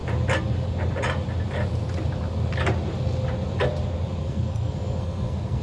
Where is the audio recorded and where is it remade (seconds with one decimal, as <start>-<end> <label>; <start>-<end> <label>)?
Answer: 0.0-4.2 recorded; 4.2-5.6 remade